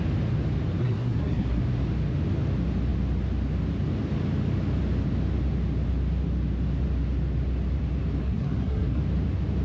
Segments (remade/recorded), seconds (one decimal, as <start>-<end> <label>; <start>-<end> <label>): 0.0-0.8 recorded; 0.8-1.6 remade; 1.6-8.2 recorded; 8.2-9.0 remade; 9.0-9.6 recorded